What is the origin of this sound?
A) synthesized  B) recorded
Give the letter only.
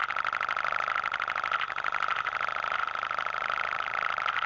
B